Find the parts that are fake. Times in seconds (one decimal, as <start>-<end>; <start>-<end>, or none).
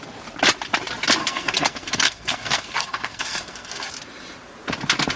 1.2-3.9